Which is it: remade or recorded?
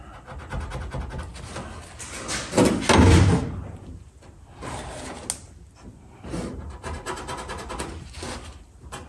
recorded